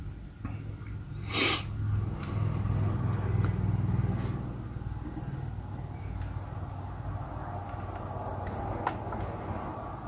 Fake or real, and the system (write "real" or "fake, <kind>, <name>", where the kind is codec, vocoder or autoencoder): real